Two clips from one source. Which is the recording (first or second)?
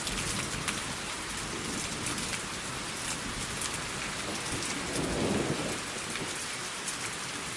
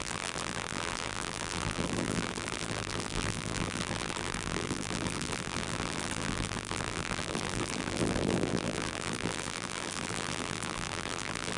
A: first